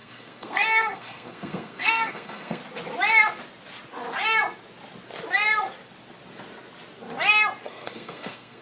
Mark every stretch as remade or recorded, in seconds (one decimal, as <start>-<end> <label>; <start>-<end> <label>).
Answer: 0.0-2.6 remade; 2.6-7.7 recorded; 7.7-8.6 remade